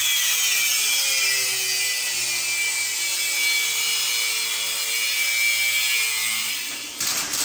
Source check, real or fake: real